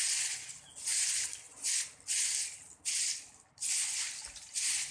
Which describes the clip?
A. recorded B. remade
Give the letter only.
A